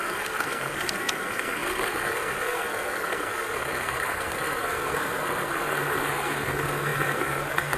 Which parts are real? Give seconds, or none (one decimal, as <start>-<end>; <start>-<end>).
none